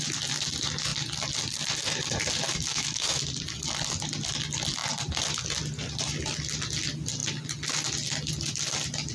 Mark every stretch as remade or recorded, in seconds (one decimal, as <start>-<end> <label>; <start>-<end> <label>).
0.0-2.7 recorded; 2.7-3.2 remade; 3.2-9.1 recorded